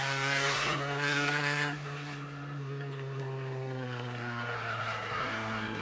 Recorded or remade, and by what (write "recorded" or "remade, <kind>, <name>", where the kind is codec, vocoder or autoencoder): remade, codec, SNAC